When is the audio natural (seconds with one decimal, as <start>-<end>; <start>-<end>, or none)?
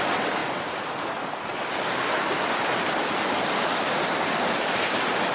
0.0-0.4; 1.0-1.5; 2.2-5.3